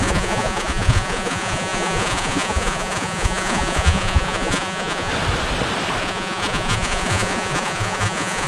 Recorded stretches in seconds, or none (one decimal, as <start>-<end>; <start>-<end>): 5.1-6.0